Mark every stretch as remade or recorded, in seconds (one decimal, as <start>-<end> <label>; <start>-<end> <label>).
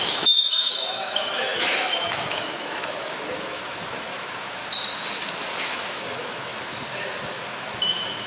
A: 0.0-4.6 remade; 4.6-5.6 recorded; 5.6-6.5 remade; 6.5-7.3 recorded; 7.3-8.3 remade